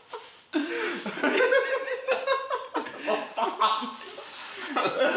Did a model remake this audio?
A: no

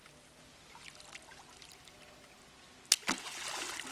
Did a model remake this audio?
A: no